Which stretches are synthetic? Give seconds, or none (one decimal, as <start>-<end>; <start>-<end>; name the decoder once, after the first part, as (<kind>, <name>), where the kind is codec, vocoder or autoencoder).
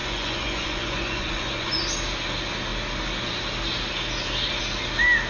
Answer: 0.0-1.8 (vocoder, Vocos)